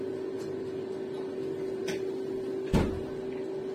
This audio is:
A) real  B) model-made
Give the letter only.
A